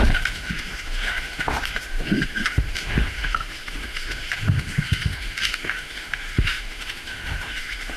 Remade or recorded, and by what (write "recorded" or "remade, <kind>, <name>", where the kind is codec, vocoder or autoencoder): remade, autoencoder, DAC-VAE